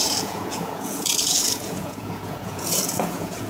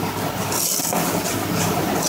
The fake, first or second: first